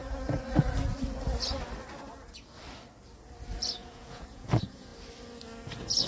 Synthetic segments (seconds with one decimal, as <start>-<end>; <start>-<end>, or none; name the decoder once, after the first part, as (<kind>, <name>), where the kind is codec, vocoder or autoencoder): 3.7-4.9 (vocoder, Vocos)

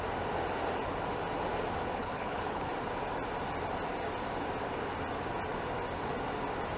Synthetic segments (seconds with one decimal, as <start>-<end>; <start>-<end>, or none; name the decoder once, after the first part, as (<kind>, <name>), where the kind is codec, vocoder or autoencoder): 2.0-2.7 (codec, HILCodec)

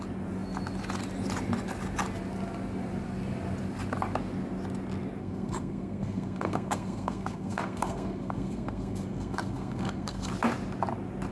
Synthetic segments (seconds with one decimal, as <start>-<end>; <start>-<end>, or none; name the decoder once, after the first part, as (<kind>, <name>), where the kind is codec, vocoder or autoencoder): 5.2-10.3 (codec, SNAC)

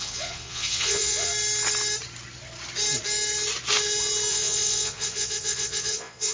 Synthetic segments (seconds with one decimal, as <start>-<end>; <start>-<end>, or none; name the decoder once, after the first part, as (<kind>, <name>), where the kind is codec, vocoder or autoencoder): 0.0-1.3 (vocoder, Vocos); 4.3-6.3

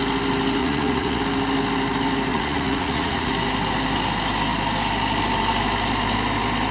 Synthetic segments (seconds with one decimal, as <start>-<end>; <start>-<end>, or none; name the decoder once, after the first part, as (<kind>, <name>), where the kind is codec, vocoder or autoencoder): 0.6-1.2 (vocoder, Vocos); 2.3-3.3

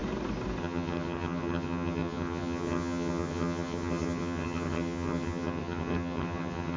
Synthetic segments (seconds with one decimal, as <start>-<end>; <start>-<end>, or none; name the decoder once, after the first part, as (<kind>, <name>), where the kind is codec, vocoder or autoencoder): 0.6-6.8 (vocoder, HiFi-GAN)

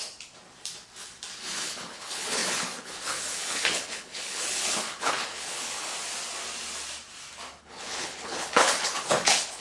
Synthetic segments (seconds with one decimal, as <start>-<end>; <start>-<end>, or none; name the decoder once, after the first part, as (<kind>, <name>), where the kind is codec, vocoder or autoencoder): 1.4-5.9 (codec, HILCodec); 7.6-9.6